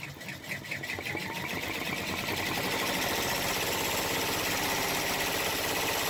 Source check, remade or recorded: recorded